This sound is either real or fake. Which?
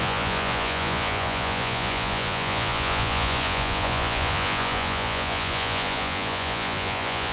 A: fake